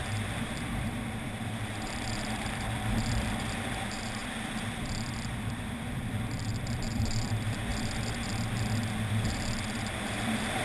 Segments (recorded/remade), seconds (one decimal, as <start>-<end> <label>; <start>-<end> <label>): 0.0-7.7 remade; 7.7-9.1 recorded; 9.1-10.6 remade